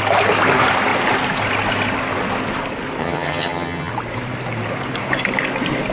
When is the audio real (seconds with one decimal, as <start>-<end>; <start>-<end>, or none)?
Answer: 0.0-3.0; 3.9-5.9